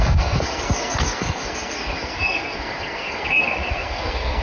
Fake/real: fake